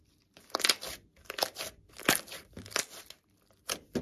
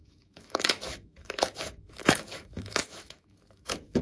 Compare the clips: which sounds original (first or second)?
first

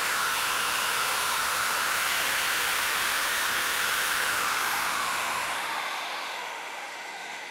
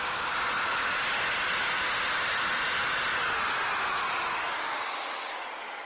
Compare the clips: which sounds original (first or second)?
second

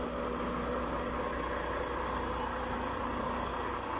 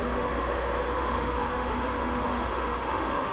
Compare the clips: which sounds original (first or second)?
first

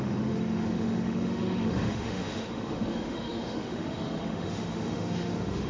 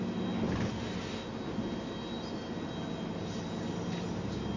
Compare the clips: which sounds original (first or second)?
second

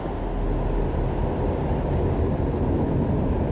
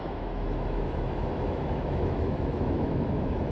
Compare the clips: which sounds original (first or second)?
first